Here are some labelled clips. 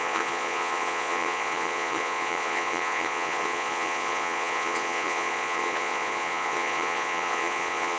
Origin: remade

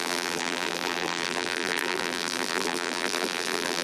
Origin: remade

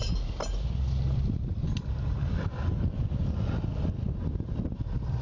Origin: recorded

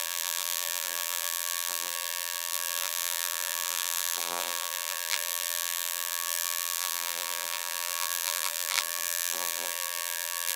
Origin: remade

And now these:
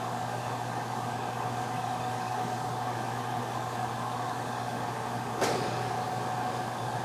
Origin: remade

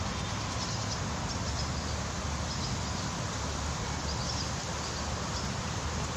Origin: recorded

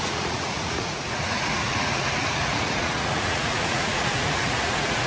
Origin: remade